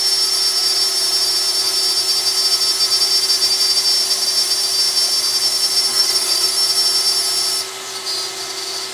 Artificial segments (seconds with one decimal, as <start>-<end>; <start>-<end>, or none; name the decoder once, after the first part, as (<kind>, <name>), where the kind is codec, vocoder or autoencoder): 5.9-6.5 (codec, SNAC)